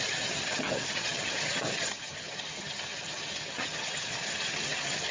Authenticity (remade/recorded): remade